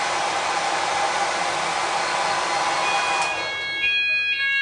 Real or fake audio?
real